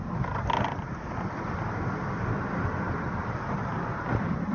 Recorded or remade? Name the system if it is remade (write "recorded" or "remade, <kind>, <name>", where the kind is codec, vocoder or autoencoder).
recorded